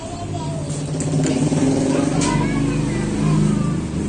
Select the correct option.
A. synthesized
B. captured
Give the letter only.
B